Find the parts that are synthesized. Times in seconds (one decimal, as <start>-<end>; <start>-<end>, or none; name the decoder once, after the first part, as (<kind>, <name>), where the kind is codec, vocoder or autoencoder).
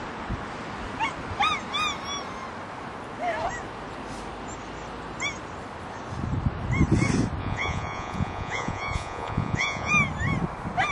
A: 7.4-9.9 (vocoder, Vocos)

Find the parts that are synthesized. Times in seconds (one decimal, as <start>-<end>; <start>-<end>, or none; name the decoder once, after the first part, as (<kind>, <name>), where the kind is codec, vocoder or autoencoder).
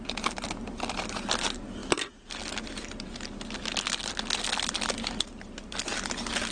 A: none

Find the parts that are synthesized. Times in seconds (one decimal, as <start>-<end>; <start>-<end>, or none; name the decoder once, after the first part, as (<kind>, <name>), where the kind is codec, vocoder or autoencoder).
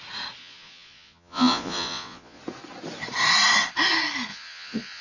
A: 0.4-2.4 (vocoder, Vocos); 4.3-5.0